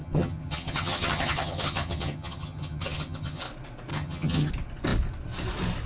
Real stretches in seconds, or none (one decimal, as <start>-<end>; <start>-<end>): 3.4-3.9; 4.5-5.9